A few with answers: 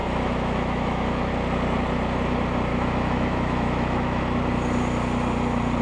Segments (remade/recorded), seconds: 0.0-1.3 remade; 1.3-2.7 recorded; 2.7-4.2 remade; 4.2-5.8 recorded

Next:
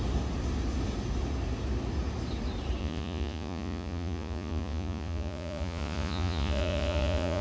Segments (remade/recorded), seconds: 0.0-2.8 recorded; 2.8-7.4 remade